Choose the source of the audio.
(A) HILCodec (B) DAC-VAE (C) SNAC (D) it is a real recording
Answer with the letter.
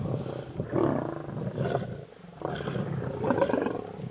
D